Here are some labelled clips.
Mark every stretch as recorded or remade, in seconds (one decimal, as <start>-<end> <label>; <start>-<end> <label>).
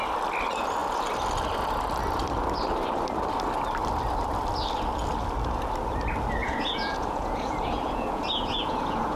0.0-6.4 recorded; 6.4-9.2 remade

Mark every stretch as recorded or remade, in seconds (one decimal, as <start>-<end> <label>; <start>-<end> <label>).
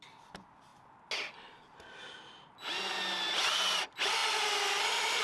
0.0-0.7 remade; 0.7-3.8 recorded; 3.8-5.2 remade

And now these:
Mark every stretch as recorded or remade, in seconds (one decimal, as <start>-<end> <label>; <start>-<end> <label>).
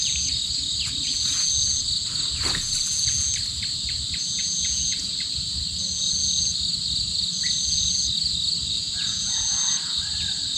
0.0-4.4 recorded; 4.4-5.1 remade; 5.1-8.6 recorded; 8.6-10.0 remade; 10.0-10.6 recorded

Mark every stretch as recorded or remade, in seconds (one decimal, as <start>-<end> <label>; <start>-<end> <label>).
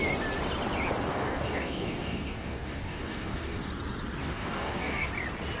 0.0-1.1 recorded; 1.1-3.7 remade; 3.7-4.2 recorded; 4.2-5.1 remade; 5.1-5.6 recorded